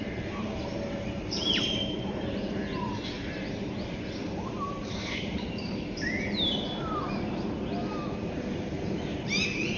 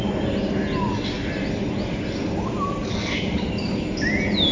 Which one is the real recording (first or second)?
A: second